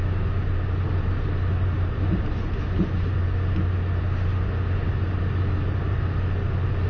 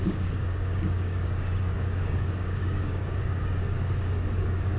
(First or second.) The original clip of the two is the first